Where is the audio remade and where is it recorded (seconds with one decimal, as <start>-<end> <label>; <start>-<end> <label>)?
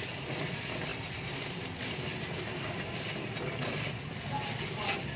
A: 0.0-5.2 recorded